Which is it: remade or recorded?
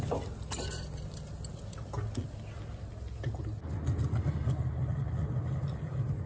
recorded